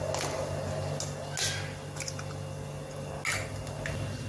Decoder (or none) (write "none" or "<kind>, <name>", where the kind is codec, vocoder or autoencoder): none